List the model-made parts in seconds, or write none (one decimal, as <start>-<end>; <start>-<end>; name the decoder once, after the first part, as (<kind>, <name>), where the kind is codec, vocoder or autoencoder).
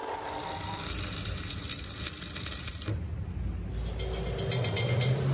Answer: none